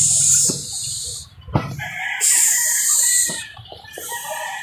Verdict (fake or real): fake